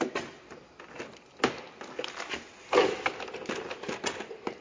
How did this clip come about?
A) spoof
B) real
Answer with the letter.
B